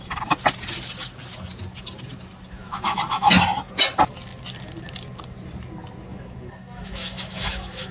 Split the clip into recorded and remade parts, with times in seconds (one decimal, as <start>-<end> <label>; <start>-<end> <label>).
0.0-2.6 recorded; 2.6-3.3 remade; 3.3-6.1 recorded; 6.1-7.9 remade